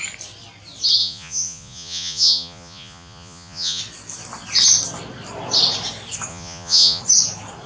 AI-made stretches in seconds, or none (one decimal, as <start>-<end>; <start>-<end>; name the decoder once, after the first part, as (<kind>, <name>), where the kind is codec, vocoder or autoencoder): 1.0-3.8 (vocoder, Vocos); 6.3-7.0